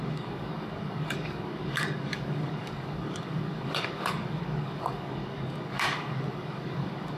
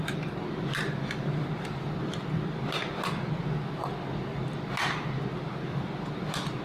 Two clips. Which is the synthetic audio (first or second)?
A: first